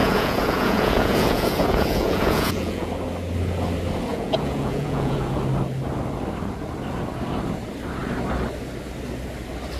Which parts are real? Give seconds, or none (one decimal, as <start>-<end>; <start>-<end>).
2.9-4.1; 5.4-9.8

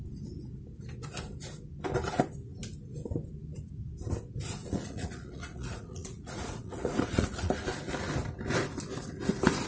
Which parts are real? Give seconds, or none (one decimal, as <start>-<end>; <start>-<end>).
0.0-4.6; 7.5-9.7

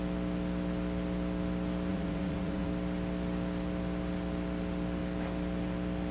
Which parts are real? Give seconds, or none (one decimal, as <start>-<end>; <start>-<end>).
0.0-1.9; 2.7-6.1

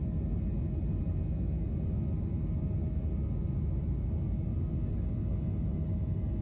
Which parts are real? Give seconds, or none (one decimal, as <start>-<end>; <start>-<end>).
0.0-6.4

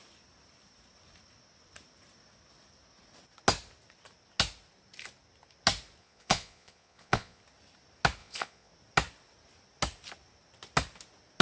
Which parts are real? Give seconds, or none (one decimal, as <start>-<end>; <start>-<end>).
0.0-6.0; 7.4-8.2; 8.7-11.4